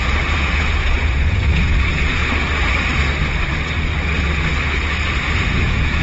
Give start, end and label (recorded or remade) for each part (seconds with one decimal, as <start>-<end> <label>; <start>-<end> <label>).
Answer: 0.0-2.2 remade; 2.2-3.5 recorded; 3.5-3.9 remade; 3.9-5.5 recorded; 5.5-6.0 remade